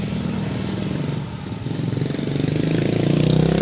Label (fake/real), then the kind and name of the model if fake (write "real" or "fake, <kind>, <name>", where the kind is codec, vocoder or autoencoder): real